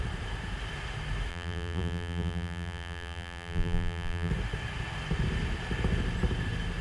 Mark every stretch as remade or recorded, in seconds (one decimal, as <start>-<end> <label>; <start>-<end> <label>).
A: 0.0-1.3 recorded; 1.3-4.3 remade; 4.3-6.8 recorded